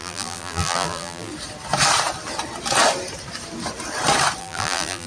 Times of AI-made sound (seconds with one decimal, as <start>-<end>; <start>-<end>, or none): 0.0-1.3; 4.4-5.1